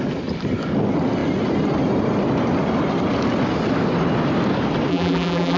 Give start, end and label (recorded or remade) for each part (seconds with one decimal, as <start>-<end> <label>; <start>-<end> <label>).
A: 0.0-4.9 recorded; 4.9-5.6 remade